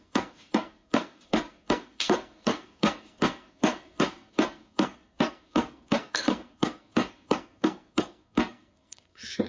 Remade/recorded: remade